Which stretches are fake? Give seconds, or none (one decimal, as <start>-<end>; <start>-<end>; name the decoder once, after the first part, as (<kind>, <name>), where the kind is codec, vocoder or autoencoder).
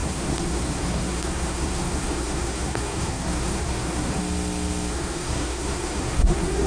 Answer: 0.0-4.2 (codec, SNAC); 4.9-6.7